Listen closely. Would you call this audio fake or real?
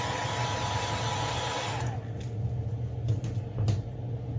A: real